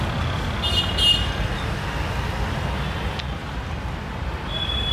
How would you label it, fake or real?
real